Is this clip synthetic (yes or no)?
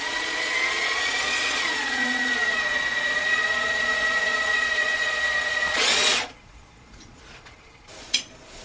yes